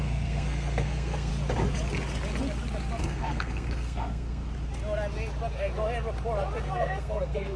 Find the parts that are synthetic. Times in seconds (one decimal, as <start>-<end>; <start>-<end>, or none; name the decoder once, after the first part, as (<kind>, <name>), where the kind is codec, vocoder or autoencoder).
0.0-1.3 (codec, SNAC); 3.0-4.4; 6.6-7.6